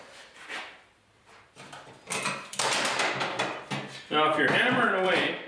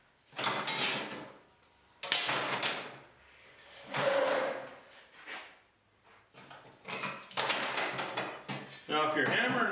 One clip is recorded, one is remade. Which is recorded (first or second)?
second